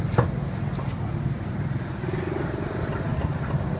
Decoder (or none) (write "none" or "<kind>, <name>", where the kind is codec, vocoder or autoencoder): none